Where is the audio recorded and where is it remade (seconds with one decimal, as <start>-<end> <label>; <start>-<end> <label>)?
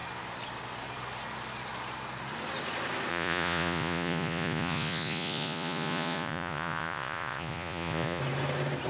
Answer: 0.0-3.1 recorded; 3.1-8.2 remade; 8.2-8.9 recorded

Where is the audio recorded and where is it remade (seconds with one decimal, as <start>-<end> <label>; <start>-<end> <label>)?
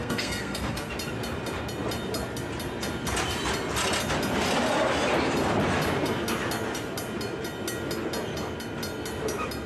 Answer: 0.0-0.9 remade; 0.9-9.7 recorded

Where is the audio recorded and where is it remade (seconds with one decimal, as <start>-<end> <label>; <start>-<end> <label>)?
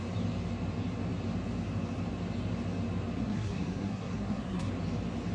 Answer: 0.0-3.2 recorded; 3.2-4.7 remade; 4.7-5.3 recorded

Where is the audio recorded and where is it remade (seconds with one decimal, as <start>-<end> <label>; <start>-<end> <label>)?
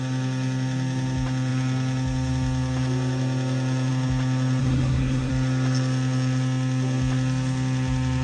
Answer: 0.0-4.6 recorded; 4.6-5.3 remade; 5.3-8.2 recorded